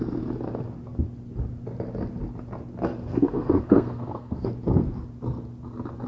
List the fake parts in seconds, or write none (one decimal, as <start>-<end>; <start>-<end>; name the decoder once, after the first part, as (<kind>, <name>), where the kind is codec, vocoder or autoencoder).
3.0-4.5 (codec, SNAC)